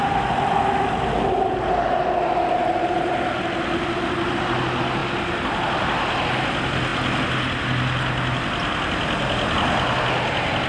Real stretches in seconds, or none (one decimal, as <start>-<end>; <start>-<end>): 0.0-10.7